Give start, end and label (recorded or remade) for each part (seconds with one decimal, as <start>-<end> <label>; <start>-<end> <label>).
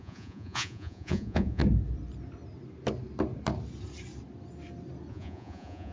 0.0-1.6 remade; 1.6-5.1 recorded; 5.1-5.9 remade